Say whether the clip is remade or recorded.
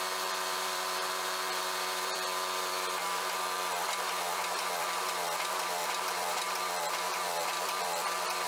remade